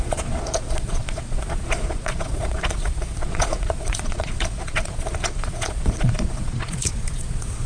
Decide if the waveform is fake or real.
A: fake